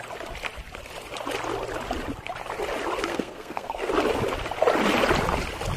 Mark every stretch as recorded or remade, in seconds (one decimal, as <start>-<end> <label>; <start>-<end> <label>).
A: 0.0-3.1 recorded; 3.1-3.9 remade; 3.9-5.8 recorded